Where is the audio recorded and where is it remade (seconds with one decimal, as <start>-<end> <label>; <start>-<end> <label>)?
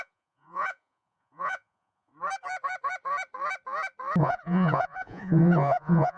0.0-2.1 remade; 2.1-4.2 recorded; 4.2-6.2 remade